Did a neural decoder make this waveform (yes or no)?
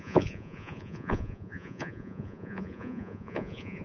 yes